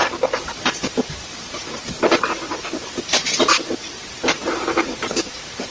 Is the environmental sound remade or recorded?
remade